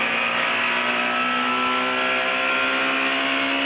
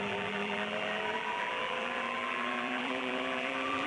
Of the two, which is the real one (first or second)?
first